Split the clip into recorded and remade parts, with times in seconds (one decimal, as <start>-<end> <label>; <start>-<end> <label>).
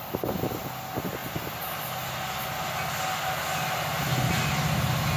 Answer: 0.0-5.2 recorded